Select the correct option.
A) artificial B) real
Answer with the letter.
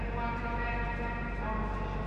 B